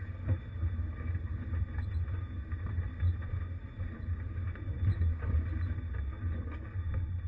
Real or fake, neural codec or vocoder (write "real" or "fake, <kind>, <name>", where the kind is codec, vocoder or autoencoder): real